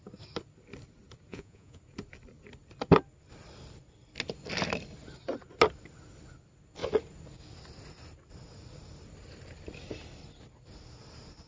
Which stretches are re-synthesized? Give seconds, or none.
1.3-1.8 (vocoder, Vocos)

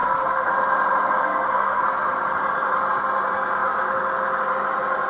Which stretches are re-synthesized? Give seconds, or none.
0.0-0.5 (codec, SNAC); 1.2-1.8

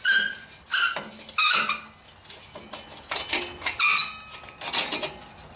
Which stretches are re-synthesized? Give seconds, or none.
none

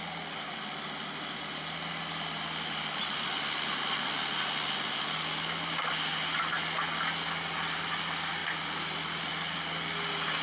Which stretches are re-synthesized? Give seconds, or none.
none

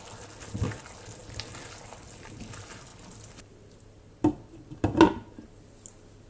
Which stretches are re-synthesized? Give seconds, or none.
none

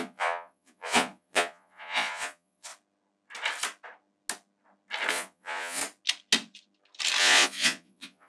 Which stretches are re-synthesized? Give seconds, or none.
0.0-2.7 (vocoder, Vocos); 5.1-5.8; 7.2-8.3